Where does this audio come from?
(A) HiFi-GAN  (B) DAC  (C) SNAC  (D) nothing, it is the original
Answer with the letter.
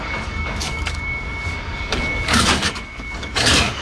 B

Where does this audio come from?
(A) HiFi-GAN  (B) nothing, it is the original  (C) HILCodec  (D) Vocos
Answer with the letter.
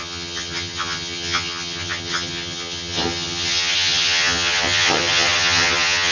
A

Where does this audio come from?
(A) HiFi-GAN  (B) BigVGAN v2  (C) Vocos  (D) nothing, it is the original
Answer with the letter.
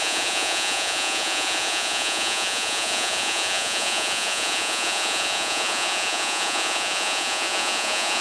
C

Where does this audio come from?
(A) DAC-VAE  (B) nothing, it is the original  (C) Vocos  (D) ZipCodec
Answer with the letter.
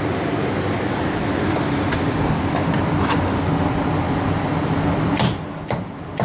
B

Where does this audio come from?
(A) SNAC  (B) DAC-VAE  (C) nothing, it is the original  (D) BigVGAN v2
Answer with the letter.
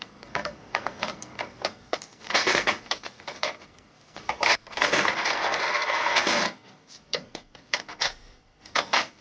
A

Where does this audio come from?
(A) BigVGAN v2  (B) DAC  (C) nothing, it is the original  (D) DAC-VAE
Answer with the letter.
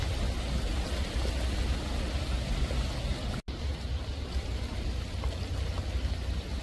C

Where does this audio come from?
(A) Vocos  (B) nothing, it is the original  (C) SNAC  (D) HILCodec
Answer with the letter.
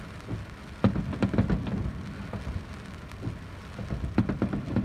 B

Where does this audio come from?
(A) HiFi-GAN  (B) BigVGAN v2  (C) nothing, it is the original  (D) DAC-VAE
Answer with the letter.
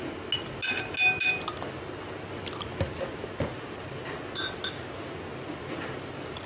C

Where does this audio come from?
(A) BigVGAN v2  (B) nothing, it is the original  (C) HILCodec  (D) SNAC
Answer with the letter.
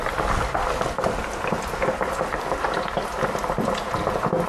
A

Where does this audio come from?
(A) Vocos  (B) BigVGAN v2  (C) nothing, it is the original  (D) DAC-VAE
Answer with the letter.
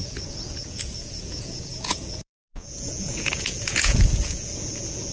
A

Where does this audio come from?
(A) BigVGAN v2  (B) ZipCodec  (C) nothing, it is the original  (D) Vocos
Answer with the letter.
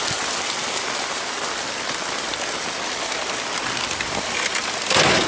C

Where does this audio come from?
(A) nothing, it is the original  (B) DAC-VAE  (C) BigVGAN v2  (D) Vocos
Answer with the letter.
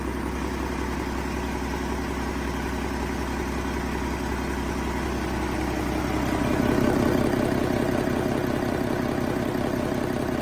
A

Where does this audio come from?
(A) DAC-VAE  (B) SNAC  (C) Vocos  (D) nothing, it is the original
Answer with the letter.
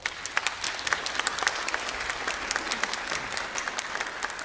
D